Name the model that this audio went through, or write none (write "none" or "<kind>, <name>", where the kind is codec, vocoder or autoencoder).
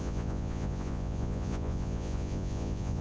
vocoder, Vocos